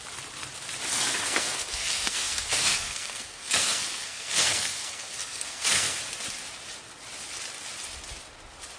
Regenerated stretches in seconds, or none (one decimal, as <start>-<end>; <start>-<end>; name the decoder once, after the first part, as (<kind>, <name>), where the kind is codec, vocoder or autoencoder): 0.9-6.0 (codec, SNAC)